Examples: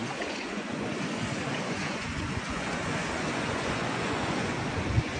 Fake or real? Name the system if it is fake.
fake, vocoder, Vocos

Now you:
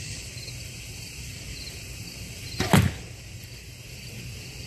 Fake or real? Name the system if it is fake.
fake, vocoder, BigVGAN v2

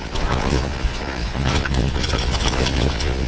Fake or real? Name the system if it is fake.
fake, vocoder, Vocos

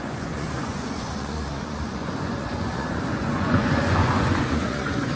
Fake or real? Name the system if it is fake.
fake, vocoder, Vocos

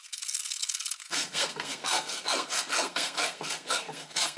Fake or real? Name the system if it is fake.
fake, codec, SNAC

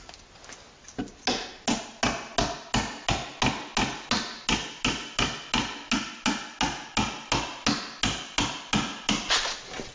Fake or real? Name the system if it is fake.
real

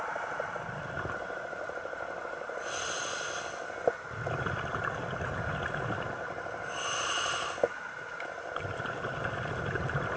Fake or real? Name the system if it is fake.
real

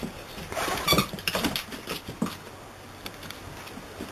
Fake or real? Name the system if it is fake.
real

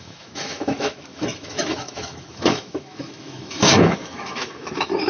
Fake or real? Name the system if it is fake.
fake, autoencoder, DAC-VAE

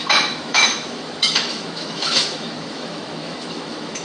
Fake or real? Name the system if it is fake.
fake, autoencoder, DAC-VAE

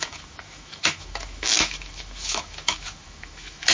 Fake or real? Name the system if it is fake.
fake, autoencoder, DAC-VAE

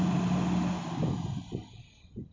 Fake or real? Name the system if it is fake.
real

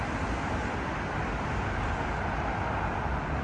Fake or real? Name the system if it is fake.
real